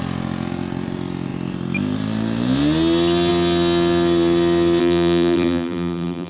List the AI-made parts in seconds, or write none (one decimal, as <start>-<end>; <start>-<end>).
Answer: 4.8-6.3